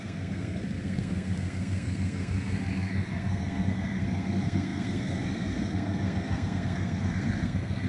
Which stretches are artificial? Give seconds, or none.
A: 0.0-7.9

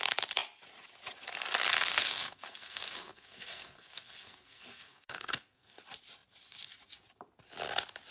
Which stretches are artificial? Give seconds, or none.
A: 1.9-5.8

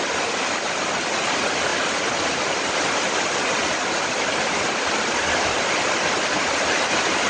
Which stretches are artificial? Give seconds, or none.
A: none

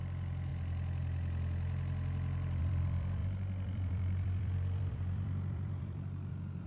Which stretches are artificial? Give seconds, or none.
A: 0.0-0.5; 2.6-6.7

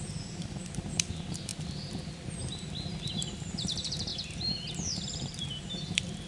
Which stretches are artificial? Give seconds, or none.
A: 0.0-1.5; 2.1-4.1; 4.7-6.3

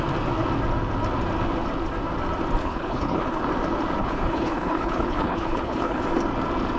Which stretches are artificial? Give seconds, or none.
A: 2.6-3.4; 4.0-6.0

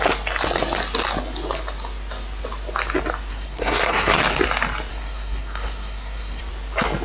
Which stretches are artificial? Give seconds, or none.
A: 3.3-4.2; 4.9-6.4

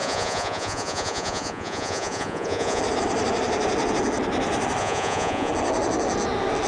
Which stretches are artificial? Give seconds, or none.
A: 0.0-2.8; 4.8-5.5